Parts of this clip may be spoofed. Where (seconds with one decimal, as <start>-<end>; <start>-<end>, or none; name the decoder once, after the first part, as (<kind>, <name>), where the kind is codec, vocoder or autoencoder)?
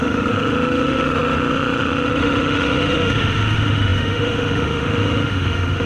0.0-5.9 (autoencoder, DAC-VAE)